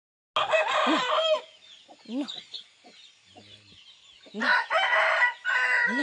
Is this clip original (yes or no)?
yes